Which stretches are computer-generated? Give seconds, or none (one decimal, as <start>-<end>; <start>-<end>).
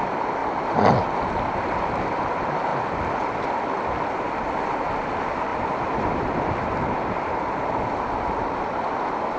0.4-1.4; 2.7-3.4; 5.5-6.8